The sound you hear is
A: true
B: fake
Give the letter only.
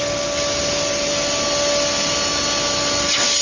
A